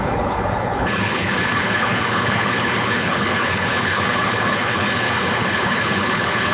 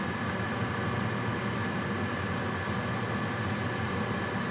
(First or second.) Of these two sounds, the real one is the second